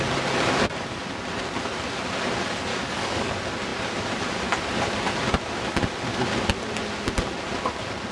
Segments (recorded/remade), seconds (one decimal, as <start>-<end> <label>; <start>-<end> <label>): 0.0-2.7 recorded; 2.7-3.3 remade; 3.3-8.1 recorded